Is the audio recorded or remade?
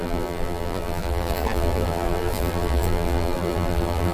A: remade